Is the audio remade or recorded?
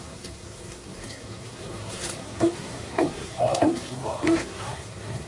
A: remade